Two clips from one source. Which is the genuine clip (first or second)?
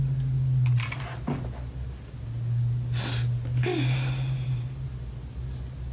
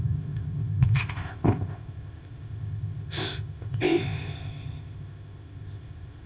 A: first